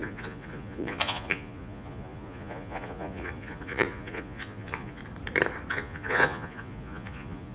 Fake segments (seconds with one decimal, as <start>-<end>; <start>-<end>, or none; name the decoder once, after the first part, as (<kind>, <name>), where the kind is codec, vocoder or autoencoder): 0.0-5.0 (vocoder, Vocos); 5.7-7.5